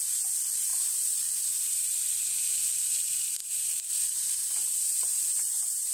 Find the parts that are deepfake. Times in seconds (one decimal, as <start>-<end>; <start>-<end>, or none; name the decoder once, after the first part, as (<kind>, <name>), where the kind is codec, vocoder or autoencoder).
0.7-2.6 (vocoder, BigVGAN v2); 3.4-5.9